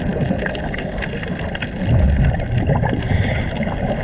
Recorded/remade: recorded